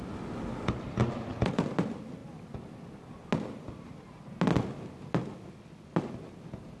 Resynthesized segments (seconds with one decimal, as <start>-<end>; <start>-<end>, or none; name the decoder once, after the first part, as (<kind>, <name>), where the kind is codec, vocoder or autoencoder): none